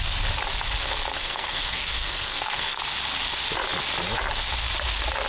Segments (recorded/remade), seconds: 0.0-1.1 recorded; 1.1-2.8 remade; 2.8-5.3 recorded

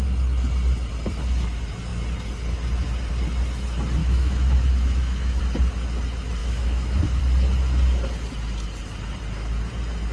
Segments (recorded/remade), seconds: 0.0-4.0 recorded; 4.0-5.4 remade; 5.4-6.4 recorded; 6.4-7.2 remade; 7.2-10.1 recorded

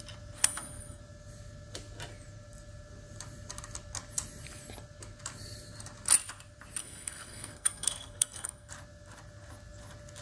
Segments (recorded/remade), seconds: 0.0-0.4 recorded; 0.4-1.0 remade; 1.0-6.8 recorded; 6.8-8.7 remade; 8.7-10.2 recorded

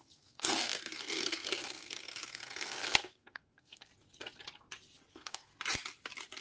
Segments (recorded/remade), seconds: 0.0-3.9 remade; 3.9-5.1 recorded; 5.1-5.5 remade; 5.5-6.4 recorded

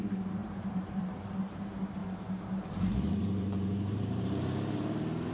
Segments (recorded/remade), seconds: 0.0-0.4 recorded; 0.4-1.2 remade; 1.2-2.0 recorded; 2.0-5.3 remade

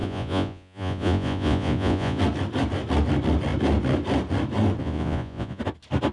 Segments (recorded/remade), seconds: 0.0-2.2 remade; 2.2-4.8 recorded; 4.8-5.6 remade; 5.6-6.1 recorded

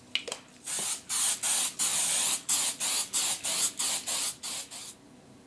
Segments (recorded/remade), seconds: 0.0-5.5 recorded

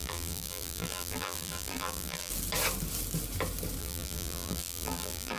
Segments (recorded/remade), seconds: 0.0-2.3 remade; 2.3-3.8 recorded; 3.8-5.4 remade